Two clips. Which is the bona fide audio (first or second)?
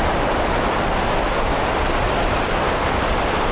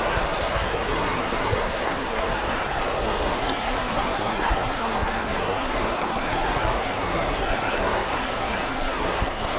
first